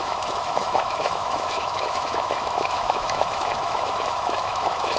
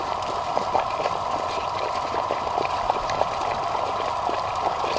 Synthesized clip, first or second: first